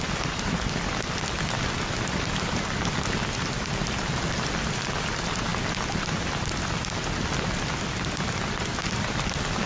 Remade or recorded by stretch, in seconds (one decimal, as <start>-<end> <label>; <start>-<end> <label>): 0.0-9.7 recorded